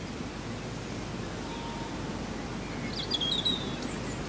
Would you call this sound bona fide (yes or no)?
yes